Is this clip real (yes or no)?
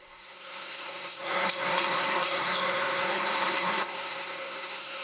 no